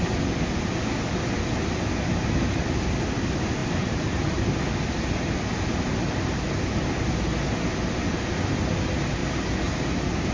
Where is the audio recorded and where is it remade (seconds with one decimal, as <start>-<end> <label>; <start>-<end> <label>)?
0.0-10.3 recorded